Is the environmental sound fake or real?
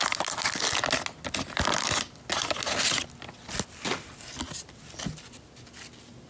real